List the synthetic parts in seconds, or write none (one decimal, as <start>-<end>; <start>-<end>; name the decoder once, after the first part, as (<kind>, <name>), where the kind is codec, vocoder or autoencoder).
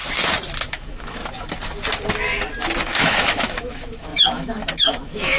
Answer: 0.7-1.2 (autoencoder, DAC-VAE); 2.8-5.4